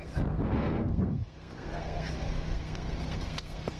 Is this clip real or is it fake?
fake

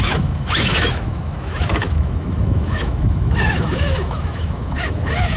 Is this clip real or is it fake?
fake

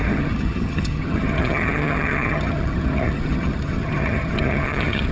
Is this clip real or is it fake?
fake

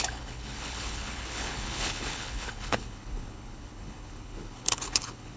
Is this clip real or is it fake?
fake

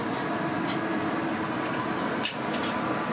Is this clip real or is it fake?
fake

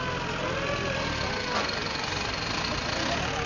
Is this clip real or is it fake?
real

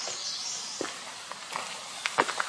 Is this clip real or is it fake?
real